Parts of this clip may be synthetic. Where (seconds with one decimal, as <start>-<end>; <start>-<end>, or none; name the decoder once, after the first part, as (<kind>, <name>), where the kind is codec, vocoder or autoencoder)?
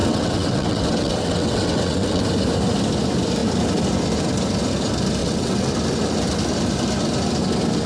0.0-2.2 (vocoder, WaveNeXt); 5.2-5.7